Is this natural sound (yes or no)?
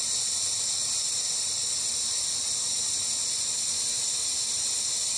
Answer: yes